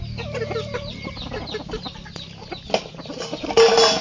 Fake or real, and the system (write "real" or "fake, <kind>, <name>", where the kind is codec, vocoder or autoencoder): real